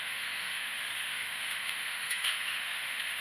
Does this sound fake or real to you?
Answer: fake